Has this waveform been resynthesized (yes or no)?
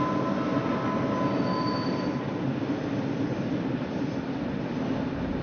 no